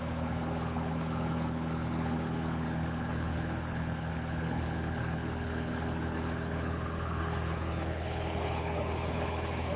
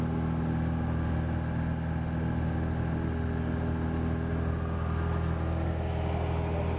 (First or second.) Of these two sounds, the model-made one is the first